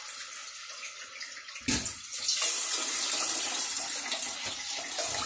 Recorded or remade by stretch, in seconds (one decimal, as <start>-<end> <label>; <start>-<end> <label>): 0.0-5.3 recorded